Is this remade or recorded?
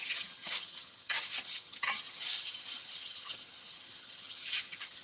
remade